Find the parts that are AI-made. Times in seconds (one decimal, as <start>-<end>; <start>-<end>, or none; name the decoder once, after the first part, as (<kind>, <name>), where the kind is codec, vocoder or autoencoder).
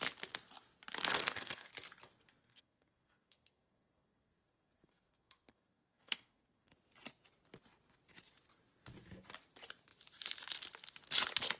1.1-1.7 (codec, SNAC); 2.4-6.7